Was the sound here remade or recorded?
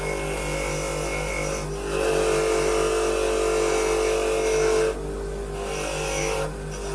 recorded